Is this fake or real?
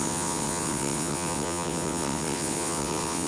fake